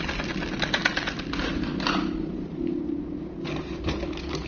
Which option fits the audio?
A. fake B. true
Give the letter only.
B